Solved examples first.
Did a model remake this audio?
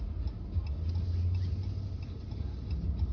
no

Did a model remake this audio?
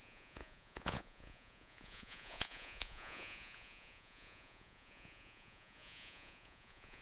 yes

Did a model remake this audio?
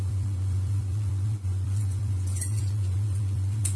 yes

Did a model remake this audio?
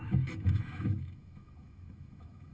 yes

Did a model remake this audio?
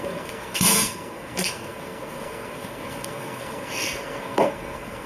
yes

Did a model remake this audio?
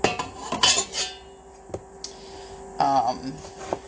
no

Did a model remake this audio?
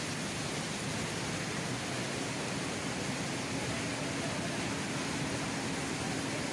no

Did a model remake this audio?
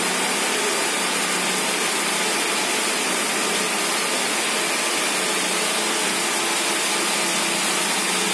no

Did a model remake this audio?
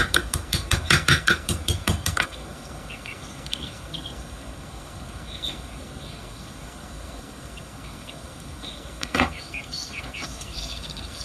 yes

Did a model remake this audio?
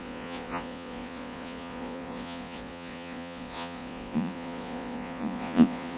yes